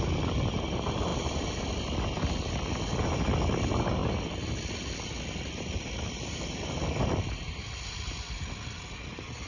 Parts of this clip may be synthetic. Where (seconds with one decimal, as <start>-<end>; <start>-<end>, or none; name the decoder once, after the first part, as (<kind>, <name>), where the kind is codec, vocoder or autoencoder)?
none